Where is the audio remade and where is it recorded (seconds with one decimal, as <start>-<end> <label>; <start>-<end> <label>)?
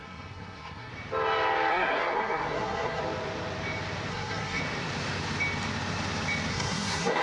0.0-0.9 remade; 0.9-1.7 recorded; 1.7-3.0 remade; 3.0-4.1 recorded; 4.1-4.6 remade; 4.6-6.5 recorded; 6.5-7.2 remade